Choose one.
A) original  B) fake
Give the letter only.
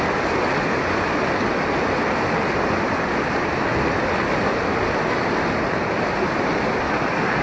A